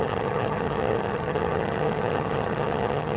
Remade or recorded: remade